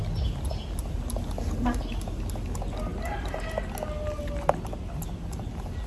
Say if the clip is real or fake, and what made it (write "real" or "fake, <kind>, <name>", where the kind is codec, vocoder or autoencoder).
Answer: real